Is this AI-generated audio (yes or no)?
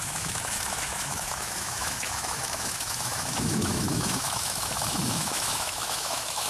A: yes